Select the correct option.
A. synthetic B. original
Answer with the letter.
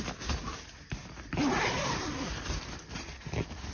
B